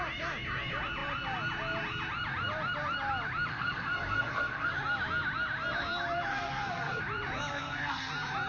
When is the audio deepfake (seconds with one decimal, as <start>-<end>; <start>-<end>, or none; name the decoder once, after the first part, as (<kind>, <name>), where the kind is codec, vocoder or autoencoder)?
3.5-4.7 (codec, SNAC); 6.3-7.0; 7.5-8.1